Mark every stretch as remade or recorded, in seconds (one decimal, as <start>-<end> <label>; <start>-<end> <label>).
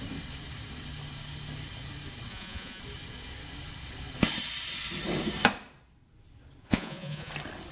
0.0-2.3 recorded; 2.3-2.8 remade; 2.8-6.6 recorded; 6.6-7.3 remade; 7.3-7.7 recorded